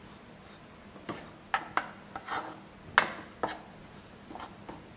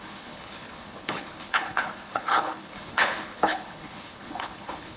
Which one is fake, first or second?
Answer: second